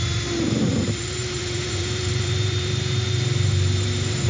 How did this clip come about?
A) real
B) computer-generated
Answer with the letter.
B